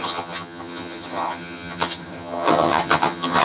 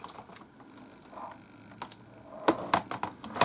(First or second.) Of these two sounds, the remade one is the first